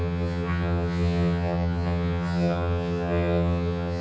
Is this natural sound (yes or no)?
no